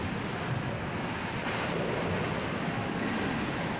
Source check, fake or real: real